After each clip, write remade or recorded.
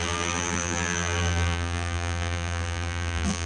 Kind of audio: remade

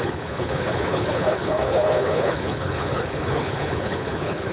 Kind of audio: remade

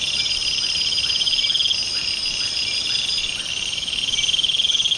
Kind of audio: recorded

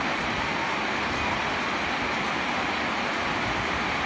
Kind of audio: recorded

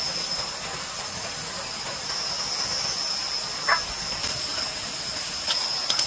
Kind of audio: recorded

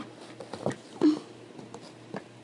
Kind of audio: recorded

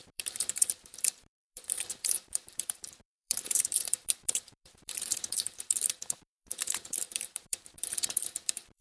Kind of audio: remade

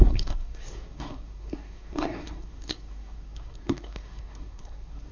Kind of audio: remade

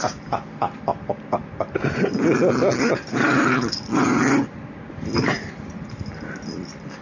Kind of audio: recorded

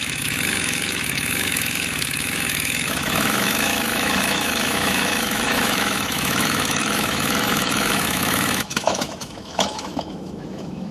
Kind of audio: remade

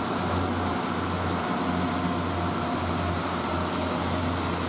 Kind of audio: recorded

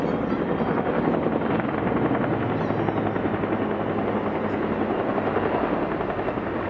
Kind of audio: recorded